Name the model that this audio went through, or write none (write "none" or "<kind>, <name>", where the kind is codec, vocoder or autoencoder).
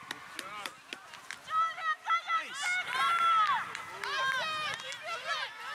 none